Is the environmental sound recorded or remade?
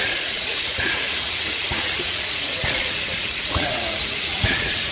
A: remade